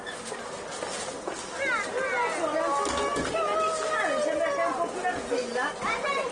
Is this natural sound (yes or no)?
yes